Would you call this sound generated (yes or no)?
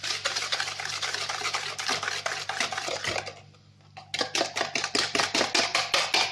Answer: no